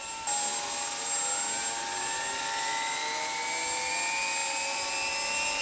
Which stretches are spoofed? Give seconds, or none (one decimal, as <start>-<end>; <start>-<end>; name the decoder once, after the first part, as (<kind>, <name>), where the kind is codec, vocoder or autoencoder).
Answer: none